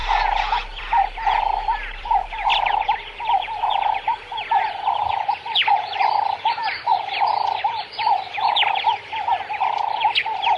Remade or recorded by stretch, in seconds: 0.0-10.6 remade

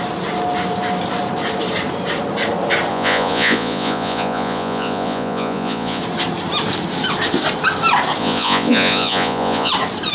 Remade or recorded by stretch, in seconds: 0.0-2.9 recorded; 2.9-6.0 remade; 6.0-8.2 recorded; 8.2-9.7 remade; 9.7-10.1 recorded